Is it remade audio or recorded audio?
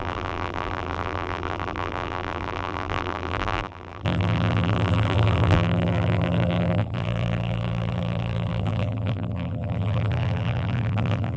remade